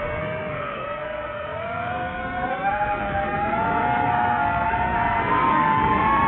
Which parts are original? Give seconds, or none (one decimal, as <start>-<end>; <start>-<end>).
none